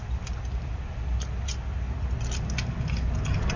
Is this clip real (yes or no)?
yes